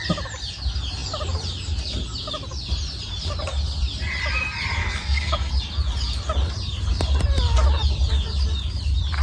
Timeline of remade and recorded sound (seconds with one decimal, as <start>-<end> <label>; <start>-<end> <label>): 0.0-4.8 recorded; 4.8-5.5 remade; 5.5-9.2 recorded